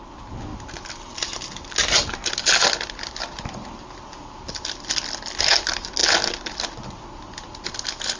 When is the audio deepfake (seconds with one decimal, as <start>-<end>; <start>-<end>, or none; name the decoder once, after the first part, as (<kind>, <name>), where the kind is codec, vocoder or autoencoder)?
none